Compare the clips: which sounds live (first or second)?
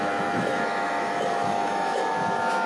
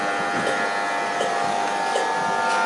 second